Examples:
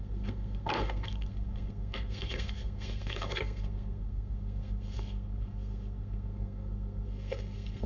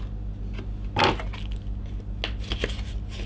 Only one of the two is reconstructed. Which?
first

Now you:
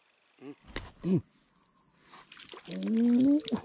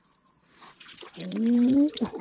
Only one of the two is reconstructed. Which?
second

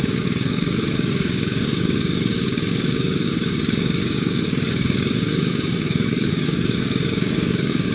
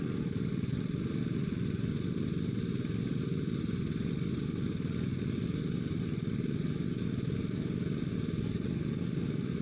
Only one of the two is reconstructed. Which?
first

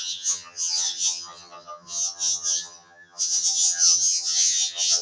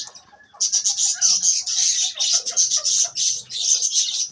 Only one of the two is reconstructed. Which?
first